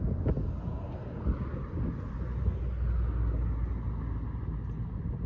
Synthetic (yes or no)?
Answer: no